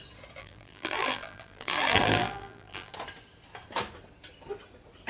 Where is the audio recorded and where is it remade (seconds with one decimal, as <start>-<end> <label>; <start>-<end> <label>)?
0.0-0.4 recorded; 0.4-2.9 remade; 2.9-5.1 recorded